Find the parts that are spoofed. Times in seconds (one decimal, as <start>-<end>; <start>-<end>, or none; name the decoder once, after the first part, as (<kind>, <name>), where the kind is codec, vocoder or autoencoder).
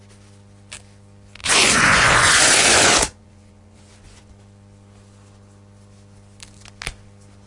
1.4-4.3 (vocoder, Vocos)